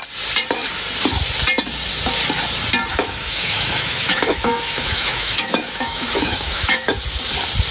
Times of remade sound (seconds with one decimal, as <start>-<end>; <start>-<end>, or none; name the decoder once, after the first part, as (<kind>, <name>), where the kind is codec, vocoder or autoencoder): 2.9-7.0 (autoencoder, DAC-VAE)